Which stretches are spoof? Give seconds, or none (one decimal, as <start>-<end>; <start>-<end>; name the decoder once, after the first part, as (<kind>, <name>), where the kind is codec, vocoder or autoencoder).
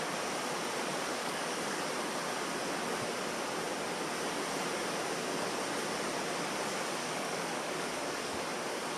1.2-1.8 (codec, DAC); 7.0-8.4